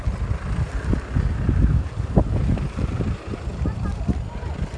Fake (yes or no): no